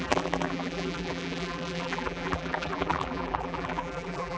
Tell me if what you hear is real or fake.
fake